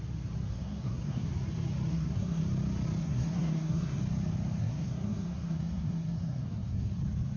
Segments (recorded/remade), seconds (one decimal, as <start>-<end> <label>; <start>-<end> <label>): 0.0-0.5 recorded; 0.5-1.3 remade; 1.3-1.9 recorded; 1.9-2.4 remade; 2.4-3.0 recorded; 3.0-4.0 remade; 4.0-4.6 recorded; 4.6-6.9 remade; 6.9-7.4 recorded